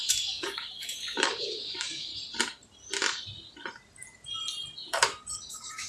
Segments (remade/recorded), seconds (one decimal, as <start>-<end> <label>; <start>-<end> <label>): 0.0-2.1 remade; 2.1-5.5 recorded; 5.5-5.9 remade